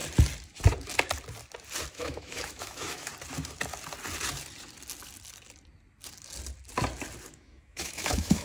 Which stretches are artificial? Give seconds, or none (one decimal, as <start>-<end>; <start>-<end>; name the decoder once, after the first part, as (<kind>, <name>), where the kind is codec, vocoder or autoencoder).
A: 1.9-3.1 (autoencoder, DAC-VAE); 7.3-8.4